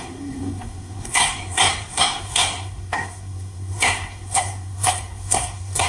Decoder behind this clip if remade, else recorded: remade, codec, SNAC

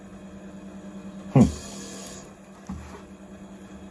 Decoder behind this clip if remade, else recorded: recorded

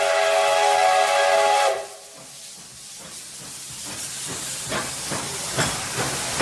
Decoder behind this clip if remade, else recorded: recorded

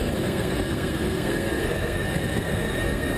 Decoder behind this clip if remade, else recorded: remade, codec, SNAC